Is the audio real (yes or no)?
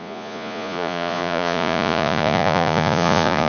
no